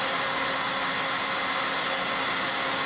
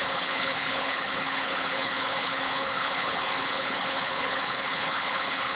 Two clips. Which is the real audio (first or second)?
first